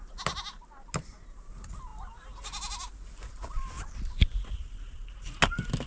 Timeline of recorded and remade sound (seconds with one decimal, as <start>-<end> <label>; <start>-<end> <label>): 0.0-5.9 recorded